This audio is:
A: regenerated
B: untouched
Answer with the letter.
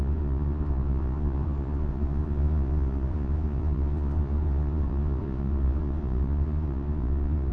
A